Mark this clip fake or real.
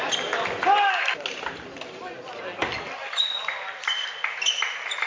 real